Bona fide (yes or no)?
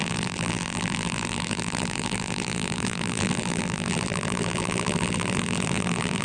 no